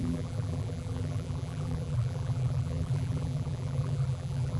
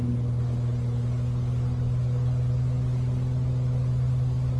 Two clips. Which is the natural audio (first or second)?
second